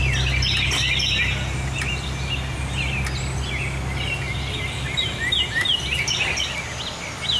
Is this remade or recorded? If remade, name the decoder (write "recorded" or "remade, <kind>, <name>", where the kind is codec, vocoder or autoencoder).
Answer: recorded